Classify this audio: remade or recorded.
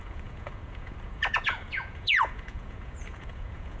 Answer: remade